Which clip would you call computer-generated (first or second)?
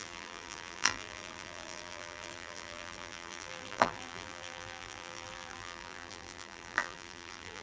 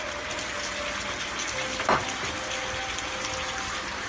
first